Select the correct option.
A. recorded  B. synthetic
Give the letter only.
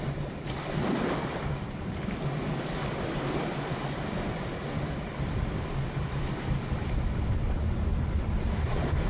B